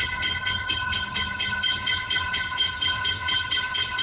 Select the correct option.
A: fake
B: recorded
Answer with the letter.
A